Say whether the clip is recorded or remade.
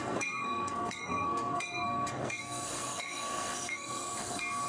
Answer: remade